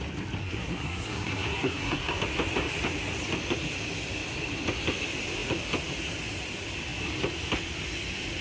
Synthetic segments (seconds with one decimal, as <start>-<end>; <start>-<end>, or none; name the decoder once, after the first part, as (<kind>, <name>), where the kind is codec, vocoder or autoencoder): 0.4-2.2 (codec, SNAC)